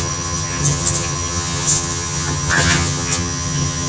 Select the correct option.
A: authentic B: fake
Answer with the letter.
B